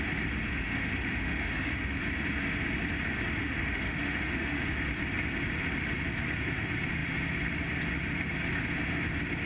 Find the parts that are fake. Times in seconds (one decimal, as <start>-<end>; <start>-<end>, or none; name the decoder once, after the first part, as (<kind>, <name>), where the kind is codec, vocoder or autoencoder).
0.5-2.0 (autoencoder, DAC-VAE); 3.4-4.6